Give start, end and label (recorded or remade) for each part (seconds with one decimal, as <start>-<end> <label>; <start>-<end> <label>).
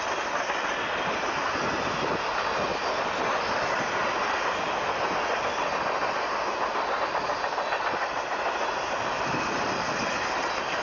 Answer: 0.0-10.8 recorded